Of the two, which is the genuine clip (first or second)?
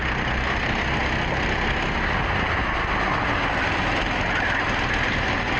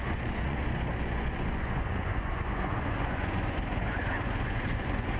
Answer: first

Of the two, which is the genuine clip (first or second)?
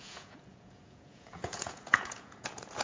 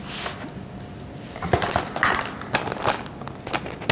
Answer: second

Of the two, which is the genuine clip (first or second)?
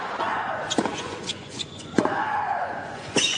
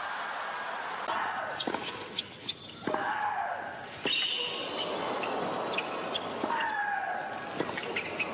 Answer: second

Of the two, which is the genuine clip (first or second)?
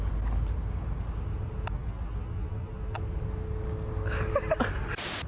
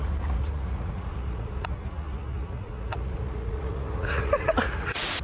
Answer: first